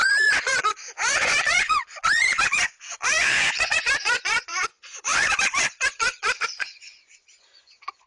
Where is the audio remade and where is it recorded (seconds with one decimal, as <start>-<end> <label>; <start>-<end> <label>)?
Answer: 0.0-8.1 remade